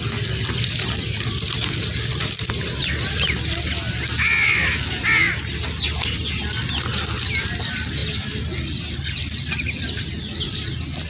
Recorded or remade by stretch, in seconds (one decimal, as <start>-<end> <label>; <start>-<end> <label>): 0.0-11.1 recorded